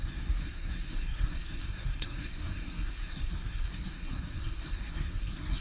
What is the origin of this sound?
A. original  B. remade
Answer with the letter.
B